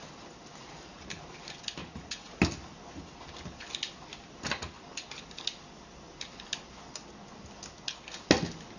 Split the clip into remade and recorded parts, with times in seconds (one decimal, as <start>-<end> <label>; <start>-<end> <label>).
0.0-1.8 recorded; 1.8-2.4 remade; 2.4-8.8 recorded